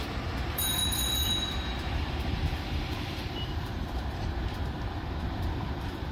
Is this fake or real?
fake